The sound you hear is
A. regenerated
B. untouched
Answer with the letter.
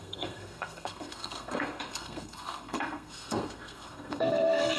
A